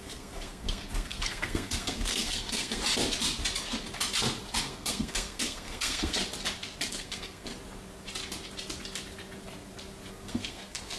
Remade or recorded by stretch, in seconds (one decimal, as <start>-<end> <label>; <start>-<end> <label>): 0.0-2.8 remade; 2.8-4.6 recorded; 4.6-6.2 remade; 6.2-6.9 recorded; 6.9-7.5 remade; 7.5-10.1 recorded; 10.1-11.0 remade